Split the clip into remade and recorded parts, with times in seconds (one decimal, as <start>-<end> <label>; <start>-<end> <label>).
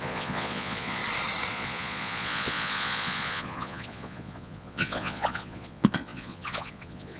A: 0.0-1.0 remade; 1.0-1.5 recorded; 1.5-7.2 remade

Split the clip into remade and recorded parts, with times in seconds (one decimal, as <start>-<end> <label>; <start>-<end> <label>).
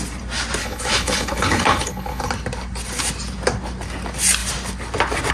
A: 0.0-0.6 recorded; 0.6-2.3 remade; 2.3-5.3 recorded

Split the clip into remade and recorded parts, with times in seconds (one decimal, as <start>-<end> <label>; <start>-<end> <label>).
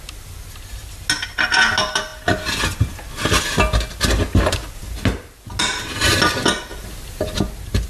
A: 0.0-7.9 recorded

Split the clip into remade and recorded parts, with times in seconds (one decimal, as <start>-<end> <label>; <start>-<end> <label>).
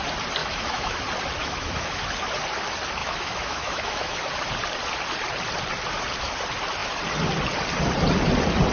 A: 0.0-0.4 recorded; 0.4-1.0 remade; 1.0-1.4 recorded; 1.4-2.0 remade; 2.0-3.0 recorded; 3.0-4.2 remade; 4.2-8.7 recorded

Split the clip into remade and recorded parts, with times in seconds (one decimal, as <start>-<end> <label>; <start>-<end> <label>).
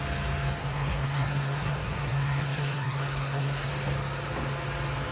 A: 0.0-0.6 recorded; 0.6-3.7 remade; 3.7-5.1 recorded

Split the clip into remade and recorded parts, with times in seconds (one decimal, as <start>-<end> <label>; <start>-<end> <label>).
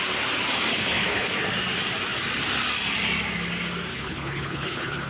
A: 0.0-0.7 recorded; 0.7-1.3 remade; 1.3-3.9 recorded; 3.9-5.1 remade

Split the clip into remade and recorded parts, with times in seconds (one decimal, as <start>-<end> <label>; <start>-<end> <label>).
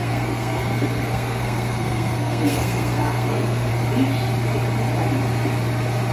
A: 0.0-3.7 remade; 3.7-6.1 recorded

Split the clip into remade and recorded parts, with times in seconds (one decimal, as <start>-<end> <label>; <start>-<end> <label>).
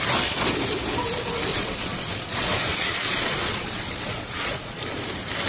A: 0.0-1.5 recorded; 1.5-4.8 remade; 4.8-5.5 recorded